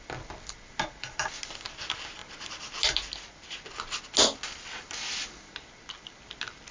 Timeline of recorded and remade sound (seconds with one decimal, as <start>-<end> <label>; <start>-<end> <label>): 0.0-6.7 recorded